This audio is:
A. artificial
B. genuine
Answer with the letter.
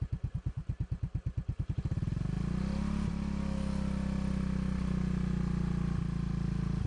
B